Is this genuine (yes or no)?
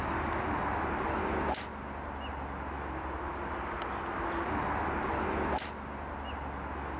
yes